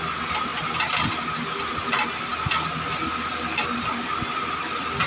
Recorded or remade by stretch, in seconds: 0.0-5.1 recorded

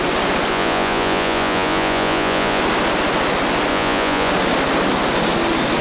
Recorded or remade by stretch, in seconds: 0.0-0.5 recorded; 0.5-2.6 remade; 2.6-3.7 recorded; 3.7-4.3 remade; 4.3-5.8 recorded

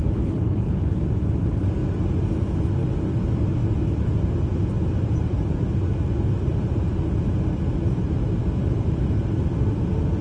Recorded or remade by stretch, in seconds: 0.0-0.9 remade; 0.9-10.2 recorded

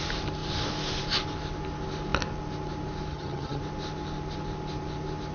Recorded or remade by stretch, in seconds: 0.0-3.1 recorded; 3.1-3.6 remade; 3.6-5.3 recorded

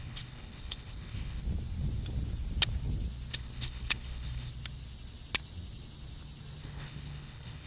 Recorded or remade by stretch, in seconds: 0.0-1.4 remade; 1.4-3.3 recorded; 3.3-4.5 remade; 4.5-6.6 recorded; 6.6-7.7 remade

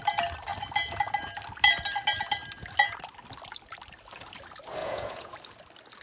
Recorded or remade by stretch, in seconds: 0.0-4.8 recorded; 4.8-5.3 remade; 5.3-6.0 recorded

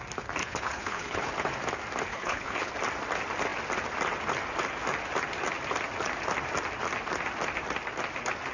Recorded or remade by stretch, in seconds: 0.0-0.4 recorded; 0.4-1.3 remade; 1.3-2.1 recorded; 2.1-2.7 remade; 2.7-8.5 recorded